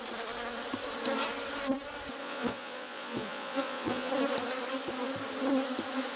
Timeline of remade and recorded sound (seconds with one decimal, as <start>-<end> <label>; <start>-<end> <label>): 0.0-2.2 recorded; 2.2-4.1 remade; 4.1-6.2 recorded